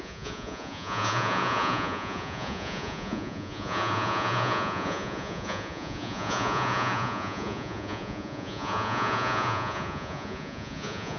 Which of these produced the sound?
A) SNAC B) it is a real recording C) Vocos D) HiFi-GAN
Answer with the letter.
C